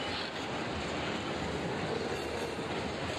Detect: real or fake real